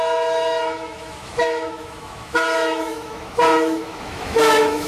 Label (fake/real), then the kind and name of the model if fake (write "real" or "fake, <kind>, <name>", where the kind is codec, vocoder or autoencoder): fake, autoencoder, DAC-VAE